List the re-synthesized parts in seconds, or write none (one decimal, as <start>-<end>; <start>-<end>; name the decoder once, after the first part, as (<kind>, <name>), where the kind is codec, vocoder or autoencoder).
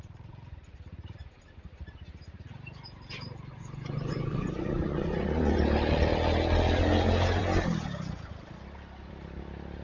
3.5-5.6 (vocoder, Vocos)